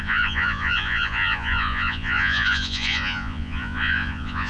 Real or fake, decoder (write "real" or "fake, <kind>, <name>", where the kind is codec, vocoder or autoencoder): fake, vocoder, Vocos